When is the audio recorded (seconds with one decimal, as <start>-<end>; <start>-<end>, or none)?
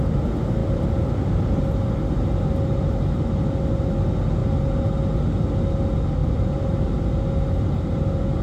0.0-0.6; 1.6-6.2; 7.0-8.4